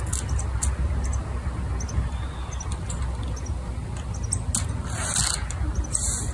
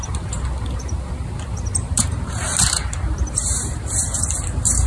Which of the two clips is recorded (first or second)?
first